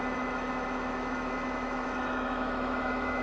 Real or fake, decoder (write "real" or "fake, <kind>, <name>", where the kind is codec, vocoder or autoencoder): fake, autoencoder, DAC-VAE